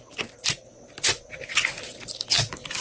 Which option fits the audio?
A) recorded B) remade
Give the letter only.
A